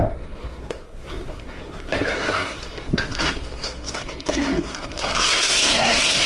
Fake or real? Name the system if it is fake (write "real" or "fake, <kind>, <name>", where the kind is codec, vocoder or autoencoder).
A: fake, codec, SNAC